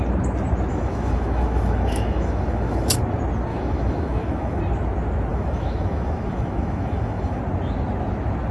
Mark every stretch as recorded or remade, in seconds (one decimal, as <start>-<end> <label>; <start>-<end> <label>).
0.0-0.7 recorded; 0.7-3.0 remade; 3.0-3.5 recorded; 3.5-4.6 remade; 4.6-5.3 recorded; 5.3-7.4 remade; 7.4-8.5 recorded

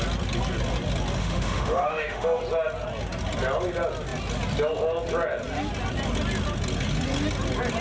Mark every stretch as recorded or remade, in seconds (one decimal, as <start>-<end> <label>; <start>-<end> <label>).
0.0-1.2 recorded; 1.2-2.4 remade; 2.4-7.8 recorded

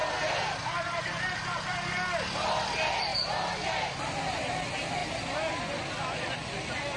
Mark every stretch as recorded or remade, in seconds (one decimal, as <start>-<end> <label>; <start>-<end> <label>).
0.0-7.0 recorded

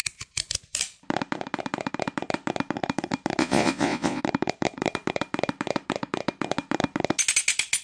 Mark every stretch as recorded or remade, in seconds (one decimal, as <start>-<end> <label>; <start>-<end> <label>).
0.0-3.4 recorded; 3.4-4.2 remade; 4.2-7.8 recorded

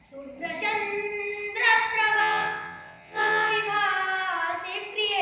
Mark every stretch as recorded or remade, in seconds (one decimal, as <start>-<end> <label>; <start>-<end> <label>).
0.0-2.2 recorded; 2.2-3.5 remade; 3.5-5.2 recorded

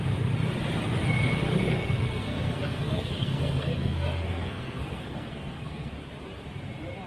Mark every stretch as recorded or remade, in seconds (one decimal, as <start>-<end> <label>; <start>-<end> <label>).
0.0-1.6 recorded; 1.6-5.9 remade; 5.9-7.1 recorded

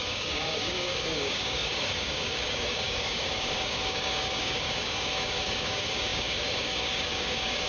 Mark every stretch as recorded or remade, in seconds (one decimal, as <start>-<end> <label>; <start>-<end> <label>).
0.0-7.7 remade

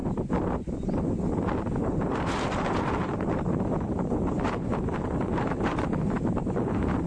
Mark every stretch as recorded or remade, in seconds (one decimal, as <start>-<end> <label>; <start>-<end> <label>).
0.0-1.8 recorded; 1.8-7.1 remade